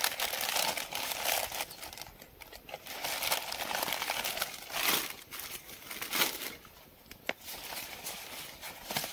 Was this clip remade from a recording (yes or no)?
no